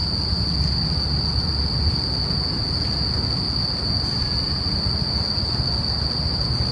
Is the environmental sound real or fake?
real